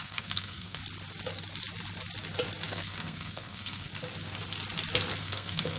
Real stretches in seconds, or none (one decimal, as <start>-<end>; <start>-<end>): 0.8-2.7; 3.9-5.2